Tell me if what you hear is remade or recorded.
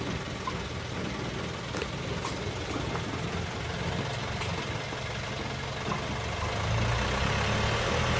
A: recorded